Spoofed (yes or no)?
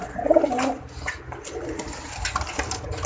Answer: no